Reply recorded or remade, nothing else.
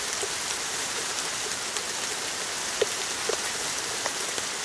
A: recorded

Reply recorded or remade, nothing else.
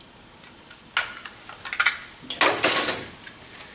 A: recorded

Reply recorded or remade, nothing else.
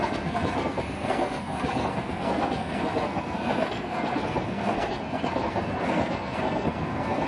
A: remade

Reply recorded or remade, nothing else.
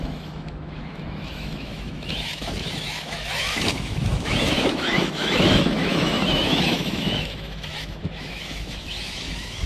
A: remade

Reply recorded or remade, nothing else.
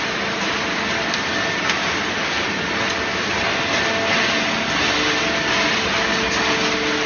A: recorded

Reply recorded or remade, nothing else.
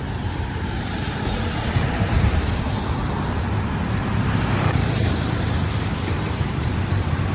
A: remade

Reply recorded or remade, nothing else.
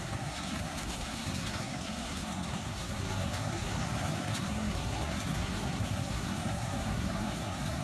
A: remade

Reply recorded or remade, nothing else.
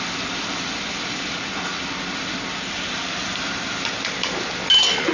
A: recorded